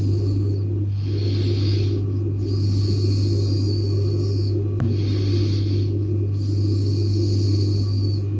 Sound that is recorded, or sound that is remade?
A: recorded